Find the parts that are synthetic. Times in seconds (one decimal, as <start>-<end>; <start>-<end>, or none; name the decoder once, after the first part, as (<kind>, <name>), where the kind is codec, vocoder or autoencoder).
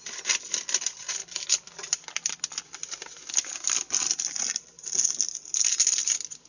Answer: none